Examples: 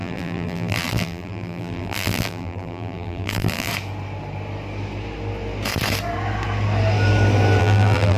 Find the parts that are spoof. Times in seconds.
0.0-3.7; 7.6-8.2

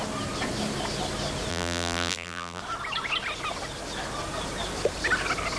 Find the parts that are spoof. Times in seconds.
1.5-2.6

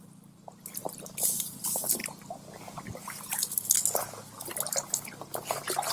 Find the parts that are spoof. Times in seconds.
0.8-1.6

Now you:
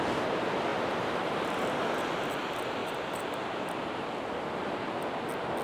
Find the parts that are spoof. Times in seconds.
0.7-1.9; 2.8-3.4

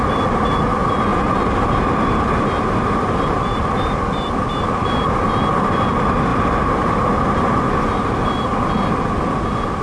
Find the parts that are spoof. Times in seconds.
0.0-1.1; 3.7-6.3; 8.0-9.8

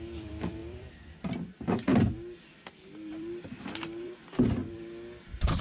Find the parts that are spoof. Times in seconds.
0.0-4.6